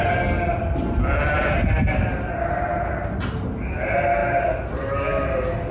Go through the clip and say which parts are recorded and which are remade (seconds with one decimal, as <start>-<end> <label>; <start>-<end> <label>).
0.0-5.7 recorded